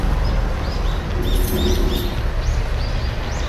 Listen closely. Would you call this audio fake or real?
real